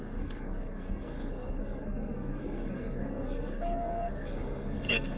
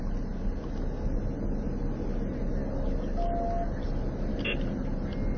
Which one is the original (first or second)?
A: second